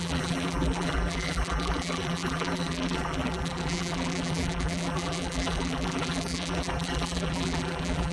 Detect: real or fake fake